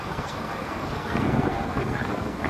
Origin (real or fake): fake